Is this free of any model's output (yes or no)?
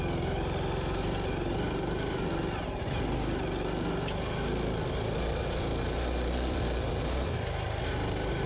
yes